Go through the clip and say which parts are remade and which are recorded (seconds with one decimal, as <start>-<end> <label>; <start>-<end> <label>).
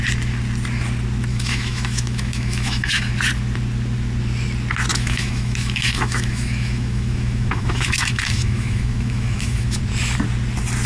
0.0-1.3 recorded; 1.3-3.1 remade; 3.1-4.9 recorded; 4.9-9.8 remade; 9.8-10.9 recorded